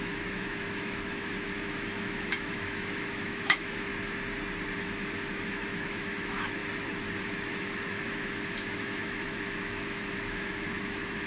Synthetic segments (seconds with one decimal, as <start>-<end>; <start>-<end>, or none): 0.0-3.9; 4.8-6.6; 7.2-11.3